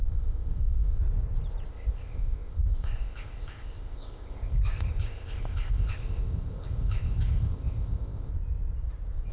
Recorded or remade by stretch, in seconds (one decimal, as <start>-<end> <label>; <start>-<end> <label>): 0.0-1.0 remade; 1.0-1.7 recorded; 1.7-8.3 remade; 8.3-9.3 recorded